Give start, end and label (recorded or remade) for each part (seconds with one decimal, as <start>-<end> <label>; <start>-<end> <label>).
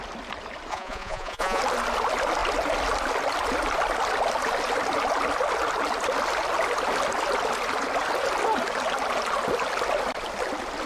0.0-0.7 recorded; 0.7-1.6 remade; 1.6-10.9 recorded